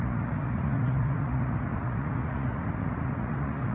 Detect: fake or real fake